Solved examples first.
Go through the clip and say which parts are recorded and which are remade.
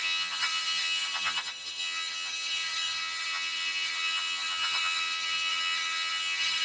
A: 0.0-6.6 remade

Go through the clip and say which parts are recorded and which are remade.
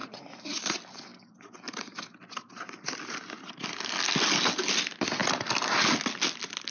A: 0.0-0.6 remade; 0.6-6.7 recorded